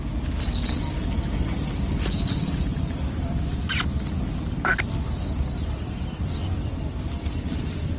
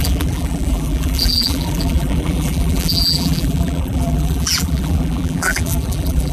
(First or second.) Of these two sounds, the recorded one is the first